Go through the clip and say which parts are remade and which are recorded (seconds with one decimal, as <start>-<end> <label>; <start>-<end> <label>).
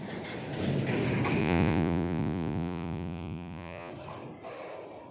0.0-1.4 recorded; 1.4-3.9 remade; 3.9-5.1 recorded